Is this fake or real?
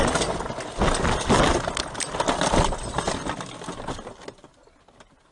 real